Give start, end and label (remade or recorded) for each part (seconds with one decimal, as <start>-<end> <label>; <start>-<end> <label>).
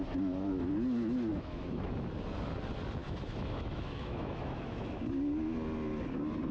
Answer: 0.0-1.3 recorded; 1.3-1.9 remade; 1.9-3.0 recorded; 3.0-5.0 remade; 5.0-6.5 recorded